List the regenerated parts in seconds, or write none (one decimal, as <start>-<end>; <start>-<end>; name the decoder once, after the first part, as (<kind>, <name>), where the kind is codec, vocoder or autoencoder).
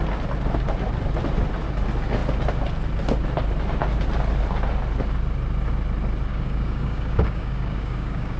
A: 6.3-8.4 (codec, DAC)